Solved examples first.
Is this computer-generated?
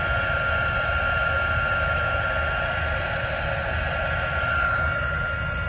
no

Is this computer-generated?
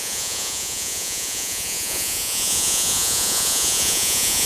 yes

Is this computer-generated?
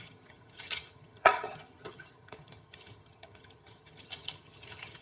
yes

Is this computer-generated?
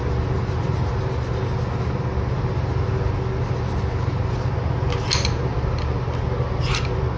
no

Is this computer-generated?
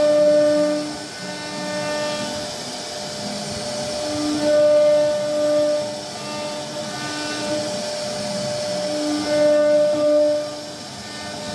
no